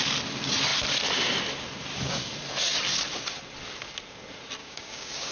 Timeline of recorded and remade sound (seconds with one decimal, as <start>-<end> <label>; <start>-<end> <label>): 0.0-4.6 recorded; 4.6-5.3 remade